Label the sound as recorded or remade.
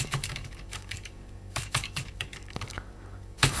remade